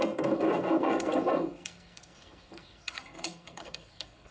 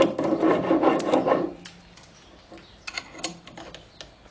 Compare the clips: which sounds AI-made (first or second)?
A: first